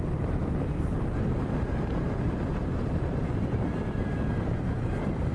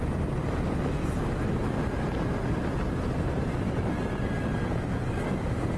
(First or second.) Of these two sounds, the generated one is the first